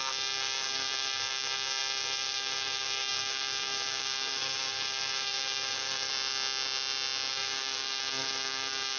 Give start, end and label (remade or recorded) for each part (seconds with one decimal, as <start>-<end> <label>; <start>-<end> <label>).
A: 0.0-6.1 remade; 6.1-7.3 recorded; 7.3-9.0 remade